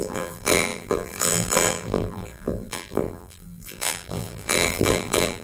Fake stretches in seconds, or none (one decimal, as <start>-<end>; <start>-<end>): 0.0-5.4